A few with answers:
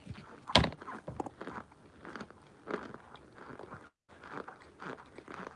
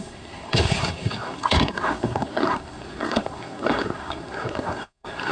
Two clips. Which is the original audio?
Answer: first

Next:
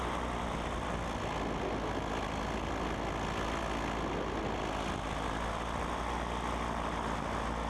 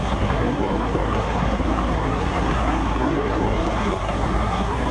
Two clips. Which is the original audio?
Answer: first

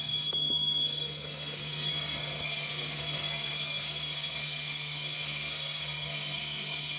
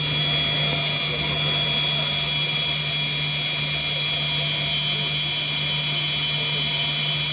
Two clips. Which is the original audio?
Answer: second